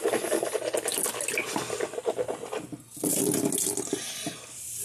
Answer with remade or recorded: recorded